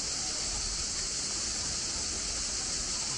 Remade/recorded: recorded